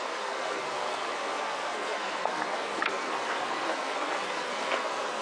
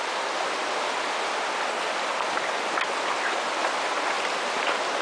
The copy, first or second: first